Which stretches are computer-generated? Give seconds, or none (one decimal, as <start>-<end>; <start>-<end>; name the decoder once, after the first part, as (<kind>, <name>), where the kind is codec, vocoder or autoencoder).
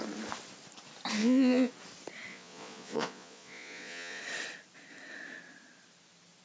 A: 1.2-1.7 (vocoder, Vocos); 2.3-4.2